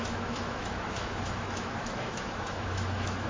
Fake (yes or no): yes